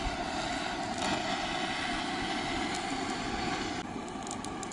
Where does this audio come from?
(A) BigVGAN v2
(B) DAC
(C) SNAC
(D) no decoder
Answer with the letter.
D